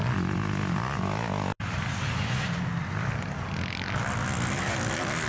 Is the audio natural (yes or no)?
yes